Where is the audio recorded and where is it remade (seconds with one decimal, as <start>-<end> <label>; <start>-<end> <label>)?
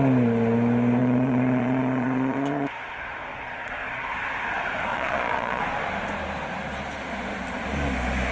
0.0-1.0 recorded; 1.0-2.9 remade; 2.9-3.3 recorded; 3.3-4.1 remade; 4.1-4.9 recorded; 4.9-5.6 remade; 5.6-8.3 recorded